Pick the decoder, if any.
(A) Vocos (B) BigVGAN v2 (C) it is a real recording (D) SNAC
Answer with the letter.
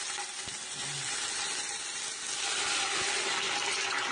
C